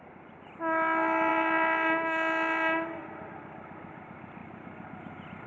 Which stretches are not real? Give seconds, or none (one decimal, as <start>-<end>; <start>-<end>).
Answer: none